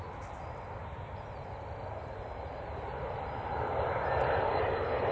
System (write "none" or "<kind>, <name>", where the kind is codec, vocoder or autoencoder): none